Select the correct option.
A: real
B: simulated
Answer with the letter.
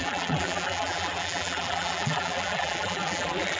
B